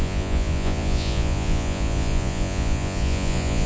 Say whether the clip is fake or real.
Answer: fake